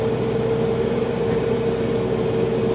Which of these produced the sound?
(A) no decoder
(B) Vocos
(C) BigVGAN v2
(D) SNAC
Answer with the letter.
A